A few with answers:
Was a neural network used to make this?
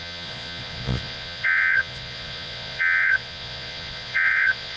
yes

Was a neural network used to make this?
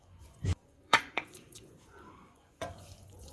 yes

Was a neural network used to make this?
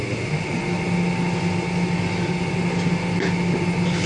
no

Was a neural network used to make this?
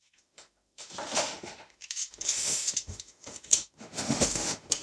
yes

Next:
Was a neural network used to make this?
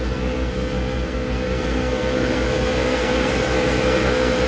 yes